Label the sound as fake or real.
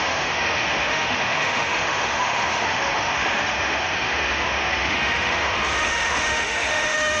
fake